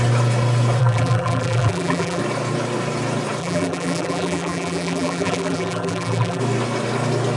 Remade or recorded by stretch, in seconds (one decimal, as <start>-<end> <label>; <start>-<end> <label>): 0.0-0.8 recorded; 0.8-2.2 remade; 2.2-3.4 recorded; 3.4-6.4 remade; 6.4-7.4 recorded